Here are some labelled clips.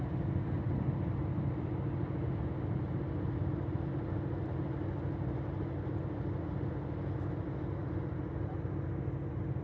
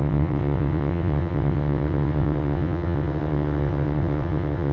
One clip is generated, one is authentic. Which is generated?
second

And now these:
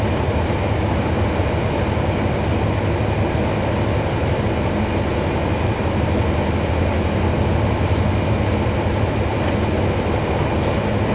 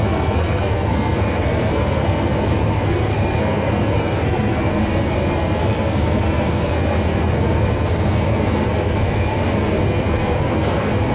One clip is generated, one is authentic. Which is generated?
second